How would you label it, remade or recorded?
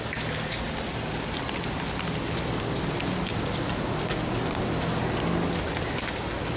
recorded